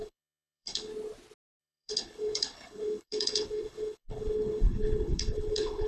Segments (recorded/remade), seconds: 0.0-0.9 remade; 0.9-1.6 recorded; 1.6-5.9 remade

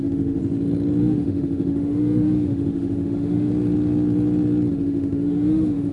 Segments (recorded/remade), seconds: 0.0-0.4 remade; 0.4-1.0 recorded; 1.0-3.5 remade; 3.5-4.7 recorded; 4.7-5.9 remade

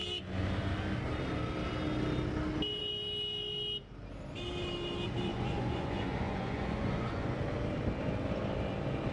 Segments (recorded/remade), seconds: 0.0-5.3 recorded; 5.3-7.4 remade; 7.4-9.1 recorded

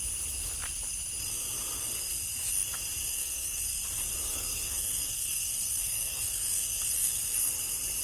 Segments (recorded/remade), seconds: 0.0-3.0 recorded; 3.0-3.6 remade; 3.6-4.3 recorded; 4.3-7.2 remade; 7.2-8.0 recorded

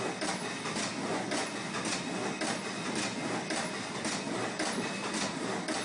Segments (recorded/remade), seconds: 0.0-1.1 recorded; 1.1-1.7 remade; 1.7-5.8 recorded